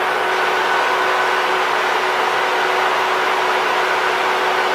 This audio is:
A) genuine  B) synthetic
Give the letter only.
A